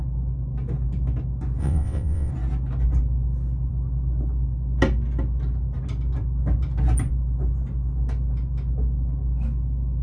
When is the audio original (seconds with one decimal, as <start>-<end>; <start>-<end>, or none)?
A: 0.0-1.6; 2.3-10.0